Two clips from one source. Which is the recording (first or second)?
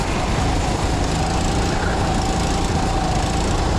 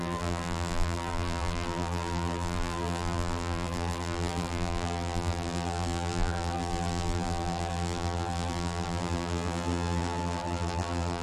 first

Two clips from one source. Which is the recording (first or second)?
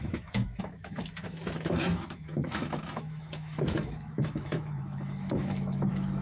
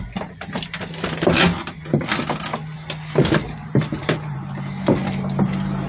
second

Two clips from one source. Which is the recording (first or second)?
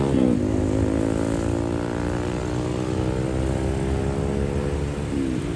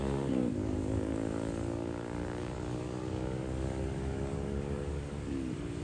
first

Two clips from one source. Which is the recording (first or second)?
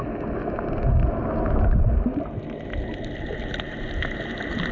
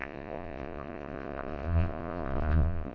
first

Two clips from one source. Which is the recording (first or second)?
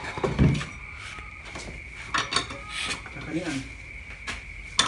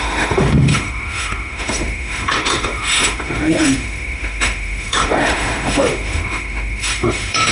first